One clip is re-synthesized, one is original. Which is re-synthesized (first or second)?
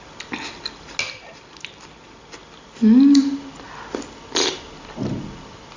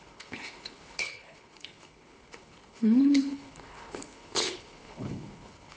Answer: second